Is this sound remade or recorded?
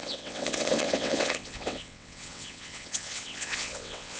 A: remade